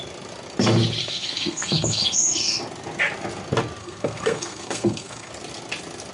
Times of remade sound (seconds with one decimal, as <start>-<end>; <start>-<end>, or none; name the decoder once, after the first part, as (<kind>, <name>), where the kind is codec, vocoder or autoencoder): 1.0-2.6 (codec, SNAC); 3.8-5.3